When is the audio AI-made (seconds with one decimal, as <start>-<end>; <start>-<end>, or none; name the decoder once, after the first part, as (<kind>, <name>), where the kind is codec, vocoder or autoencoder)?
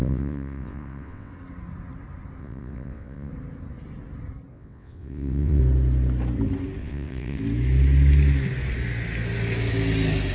0.0-1.3 (vocoder, WaveNeXt); 2.4-3.3; 4.5-5.6; 6.8-7.4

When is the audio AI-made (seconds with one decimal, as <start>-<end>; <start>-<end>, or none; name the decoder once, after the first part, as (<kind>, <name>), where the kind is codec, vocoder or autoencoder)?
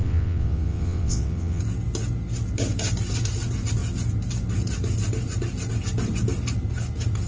0.0-1.6 (vocoder, WaveNeXt)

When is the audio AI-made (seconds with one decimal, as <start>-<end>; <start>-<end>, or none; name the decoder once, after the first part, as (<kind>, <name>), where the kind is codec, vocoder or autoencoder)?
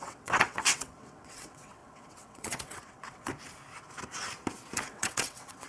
0.0-3.3 (vocoder, WaveNeXt); 4.9-5.7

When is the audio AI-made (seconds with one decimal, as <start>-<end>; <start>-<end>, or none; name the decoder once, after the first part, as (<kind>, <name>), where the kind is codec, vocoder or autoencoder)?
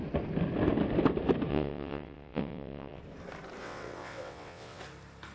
1.5-3.0 (vocoder, WaveNeXt); 3.6-4.8